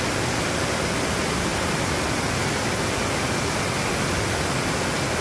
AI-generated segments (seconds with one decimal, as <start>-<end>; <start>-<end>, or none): none